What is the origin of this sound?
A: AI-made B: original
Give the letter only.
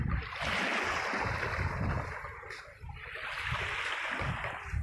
B